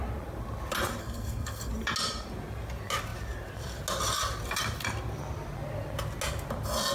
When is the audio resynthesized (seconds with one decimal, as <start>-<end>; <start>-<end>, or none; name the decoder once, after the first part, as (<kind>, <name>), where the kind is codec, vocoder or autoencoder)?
1.0-1.7 (codec, SNAC)